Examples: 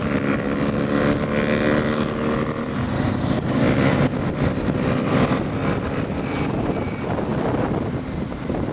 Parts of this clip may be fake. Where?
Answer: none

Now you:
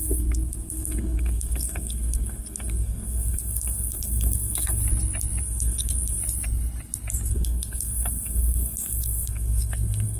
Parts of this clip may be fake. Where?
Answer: 0.0-4.8 (codec, SNAC); 5.4-6.2; 7.3-10.2